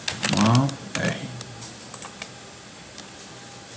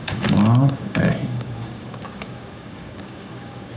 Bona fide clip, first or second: first